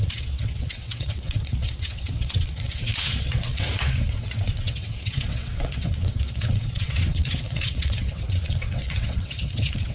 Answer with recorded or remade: remade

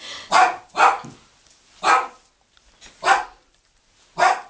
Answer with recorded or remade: recorded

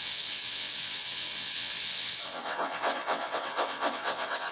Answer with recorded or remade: remade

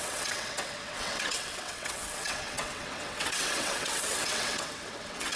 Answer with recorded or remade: remade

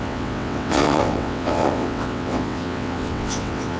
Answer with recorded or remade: remade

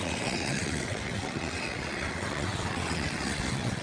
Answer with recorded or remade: remade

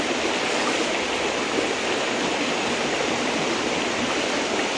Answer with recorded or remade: recorded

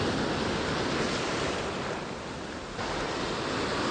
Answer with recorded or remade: recorded